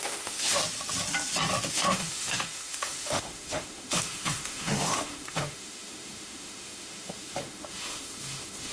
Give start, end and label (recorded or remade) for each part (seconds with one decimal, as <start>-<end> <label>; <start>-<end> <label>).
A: 0.0-0.6 remade; 0.6-1.7 recorded; 1.7-8.7 remade